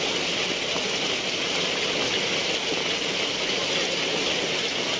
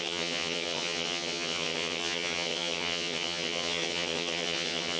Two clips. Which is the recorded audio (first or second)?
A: first